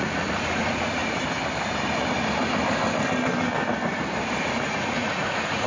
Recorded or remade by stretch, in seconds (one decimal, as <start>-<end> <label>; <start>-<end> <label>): 0.0-1.0 remade; 1.0-4.4 recorded; 4.4-5.7 remade